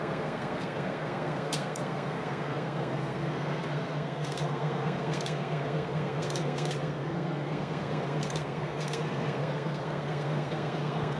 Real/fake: fake